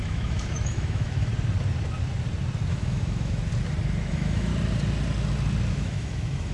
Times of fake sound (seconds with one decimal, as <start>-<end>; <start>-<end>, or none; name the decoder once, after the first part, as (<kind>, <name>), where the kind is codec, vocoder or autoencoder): 0.0-1.3 (autoencoder, DAC-VAE); 2.7-3.5; 4.0-4.5; 5.7-6.5